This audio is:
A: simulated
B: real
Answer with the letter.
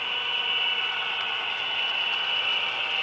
B